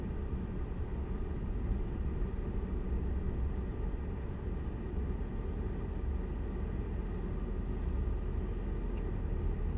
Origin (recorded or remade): recorded